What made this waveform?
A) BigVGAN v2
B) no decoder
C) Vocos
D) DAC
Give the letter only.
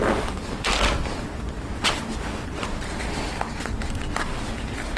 B